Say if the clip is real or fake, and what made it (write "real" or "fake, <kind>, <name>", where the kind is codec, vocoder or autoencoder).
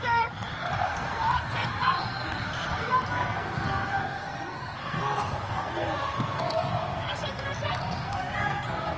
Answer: fake, codec, SNAC